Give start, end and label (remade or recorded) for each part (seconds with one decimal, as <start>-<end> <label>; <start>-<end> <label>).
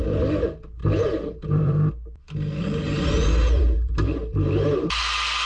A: 0.0-0.8 recorded; 0.8-1.9 remade; 1.9-2.8 recorded; 2.8-5.0 remade; 5.0-5.5 recorded